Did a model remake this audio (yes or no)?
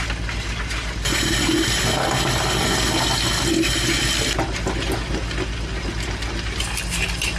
no